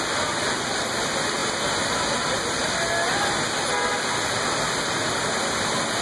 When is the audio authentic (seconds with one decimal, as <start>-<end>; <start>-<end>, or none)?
0.0-6.0